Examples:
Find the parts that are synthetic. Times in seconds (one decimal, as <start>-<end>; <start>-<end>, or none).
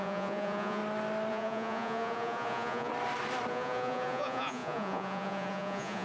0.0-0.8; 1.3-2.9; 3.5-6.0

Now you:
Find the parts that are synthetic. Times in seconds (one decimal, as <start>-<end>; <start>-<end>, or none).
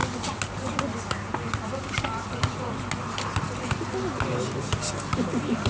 none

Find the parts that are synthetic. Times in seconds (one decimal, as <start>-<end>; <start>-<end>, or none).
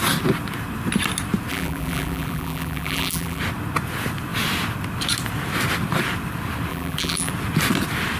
1.5-3.4; 6.7-7.3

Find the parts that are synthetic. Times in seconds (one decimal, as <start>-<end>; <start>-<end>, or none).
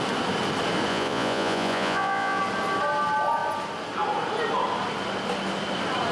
0.9-2.4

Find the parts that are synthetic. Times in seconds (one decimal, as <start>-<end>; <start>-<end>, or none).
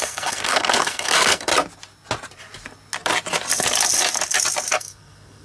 0.0-1.5; 4.7-5.4